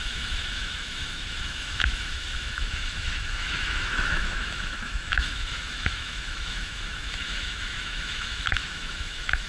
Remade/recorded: remade